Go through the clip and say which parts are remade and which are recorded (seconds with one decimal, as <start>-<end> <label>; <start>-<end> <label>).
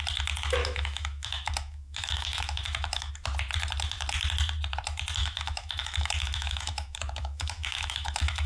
0.0-0.6 recorded; 0.6-3.1 remade; 3.1-5.2 recorded; 5.2-8.5 remade